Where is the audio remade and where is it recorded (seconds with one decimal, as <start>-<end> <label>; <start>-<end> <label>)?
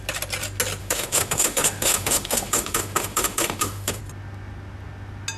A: 0.0-0.8 recorded; 0.8-4.0 remade; 4.0-5.4 recorded